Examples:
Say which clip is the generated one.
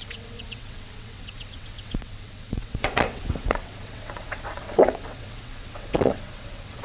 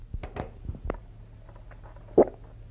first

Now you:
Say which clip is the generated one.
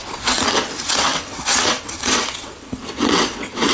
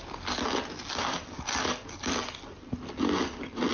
first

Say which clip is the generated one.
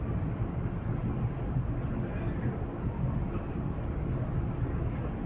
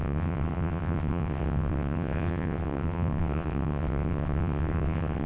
second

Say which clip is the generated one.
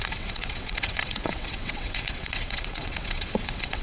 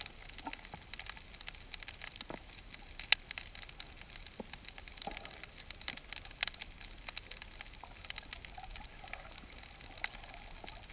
first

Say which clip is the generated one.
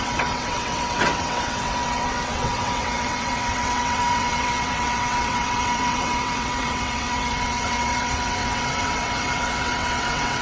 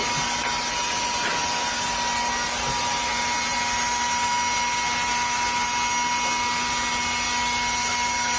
first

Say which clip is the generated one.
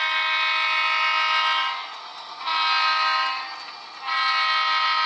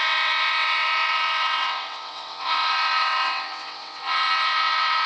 second